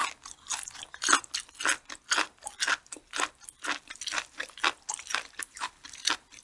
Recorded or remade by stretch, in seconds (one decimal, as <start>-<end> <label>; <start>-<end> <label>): 0.0-5.1 recorded; 5.1-5.7 remade; 5.7-6.4 recorded